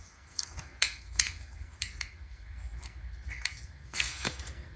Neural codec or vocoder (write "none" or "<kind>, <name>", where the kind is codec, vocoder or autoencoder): codec, SNAC